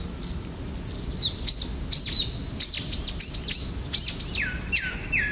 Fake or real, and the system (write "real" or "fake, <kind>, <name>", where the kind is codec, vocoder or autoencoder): real